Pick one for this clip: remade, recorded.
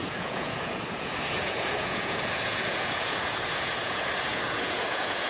remade